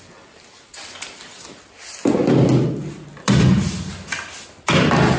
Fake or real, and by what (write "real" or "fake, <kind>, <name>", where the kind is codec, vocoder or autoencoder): real